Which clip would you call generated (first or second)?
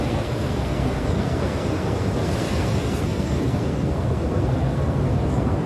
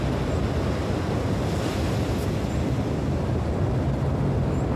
first